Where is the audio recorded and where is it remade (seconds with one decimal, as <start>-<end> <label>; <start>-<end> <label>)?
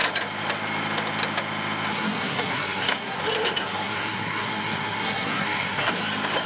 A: 0.0-1.9 recorded; 1.9-3.2 remade; 3.2-3.6 recorded; 3.6-5.9 remade; 5.9-6.5 recorded